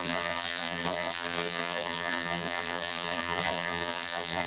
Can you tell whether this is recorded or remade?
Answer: remade